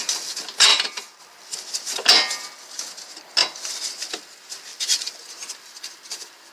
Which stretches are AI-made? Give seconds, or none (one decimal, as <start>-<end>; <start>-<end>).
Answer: 0.7-1.2; 3.4-4.2; 4.7-6.5